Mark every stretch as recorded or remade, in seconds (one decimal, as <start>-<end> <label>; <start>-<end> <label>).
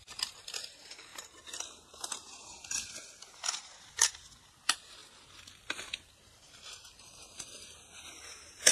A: 0.0-5.0 recorded; 5.0-6.1 remade; 6.1-8.7 recorded